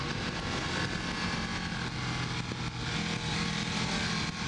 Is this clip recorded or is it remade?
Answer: recorded